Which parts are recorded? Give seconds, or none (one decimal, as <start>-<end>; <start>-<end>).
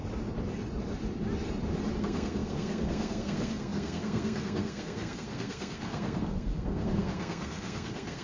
0.0-2.0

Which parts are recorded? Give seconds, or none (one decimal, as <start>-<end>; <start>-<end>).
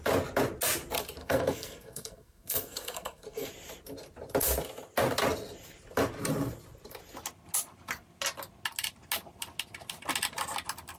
0.0-1.2; 3.5-11.0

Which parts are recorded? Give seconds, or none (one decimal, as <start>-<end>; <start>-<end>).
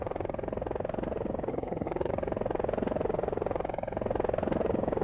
0.0-1.5; 2.1-5.0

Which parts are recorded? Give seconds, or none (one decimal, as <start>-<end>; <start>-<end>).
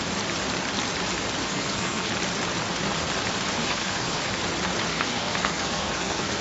0.0-1.4; 2.1-3.6; 4.3-4.9